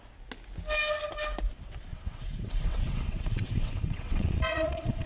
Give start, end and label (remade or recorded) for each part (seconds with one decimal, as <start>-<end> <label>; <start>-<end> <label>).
0.0-1.9 recorded; 1.9-5.1 remade